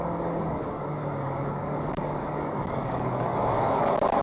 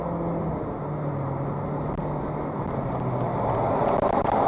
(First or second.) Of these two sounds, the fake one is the first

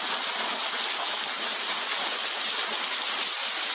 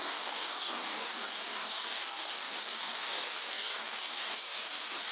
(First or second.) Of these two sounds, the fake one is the second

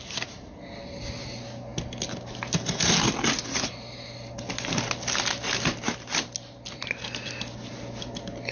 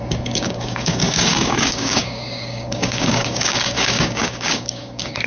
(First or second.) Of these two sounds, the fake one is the second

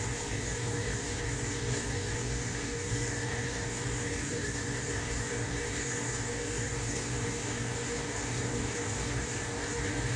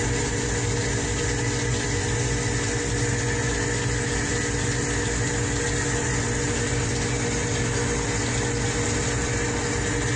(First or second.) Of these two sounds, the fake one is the first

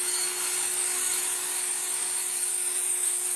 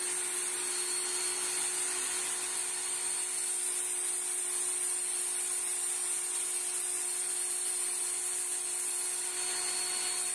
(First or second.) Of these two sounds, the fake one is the first